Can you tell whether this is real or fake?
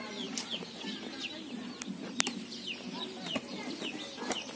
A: real